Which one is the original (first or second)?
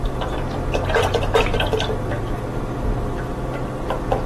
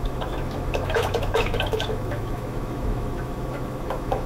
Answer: first